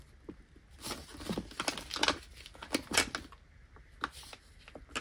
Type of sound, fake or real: real